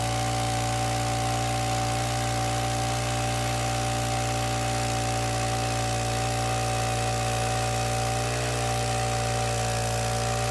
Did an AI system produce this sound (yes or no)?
no